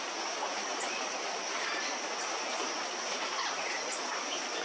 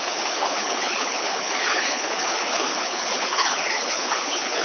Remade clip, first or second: second